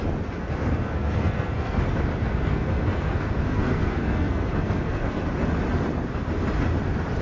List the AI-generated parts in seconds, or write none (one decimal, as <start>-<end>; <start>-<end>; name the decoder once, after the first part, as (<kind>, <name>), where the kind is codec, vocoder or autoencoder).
0.4-1.8 (codec, SNAC); 2.2-5.2